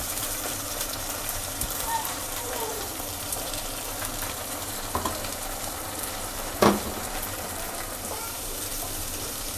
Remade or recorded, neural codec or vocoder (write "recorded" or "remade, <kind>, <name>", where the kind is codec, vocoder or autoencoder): remade, vocoder, BigVGAN v2